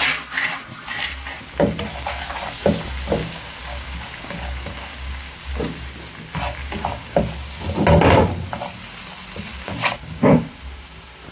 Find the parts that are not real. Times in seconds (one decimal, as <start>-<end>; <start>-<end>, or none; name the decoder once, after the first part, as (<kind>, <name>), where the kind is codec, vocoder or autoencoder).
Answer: 3.2-5.5 (codec, DAC); 6.6-7.2; 9.5-10.5